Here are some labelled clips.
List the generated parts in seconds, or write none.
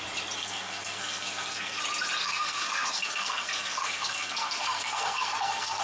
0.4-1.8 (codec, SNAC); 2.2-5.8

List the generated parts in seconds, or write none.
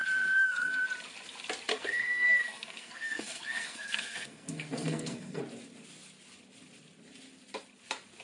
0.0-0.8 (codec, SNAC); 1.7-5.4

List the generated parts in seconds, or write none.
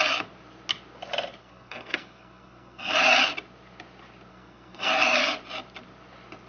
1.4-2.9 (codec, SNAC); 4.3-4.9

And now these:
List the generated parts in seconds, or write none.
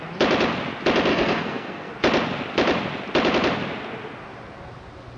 1.1-1.9 (codec, SNAC)